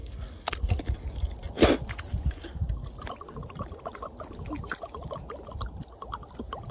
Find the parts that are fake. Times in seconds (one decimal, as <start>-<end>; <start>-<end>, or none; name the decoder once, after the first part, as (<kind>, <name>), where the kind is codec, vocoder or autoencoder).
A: 0.0-0.8 (codec, SNAC)